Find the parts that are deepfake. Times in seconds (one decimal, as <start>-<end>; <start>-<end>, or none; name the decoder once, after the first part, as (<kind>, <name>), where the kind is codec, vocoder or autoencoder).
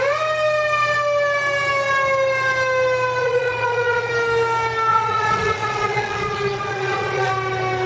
3.2-4.1 (vocoder, Vocos); 4.9-7.3